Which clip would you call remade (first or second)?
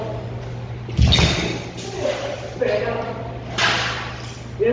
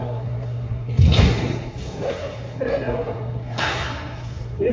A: second